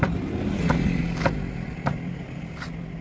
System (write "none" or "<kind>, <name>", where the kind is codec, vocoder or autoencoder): vocoder, BigVGAN v2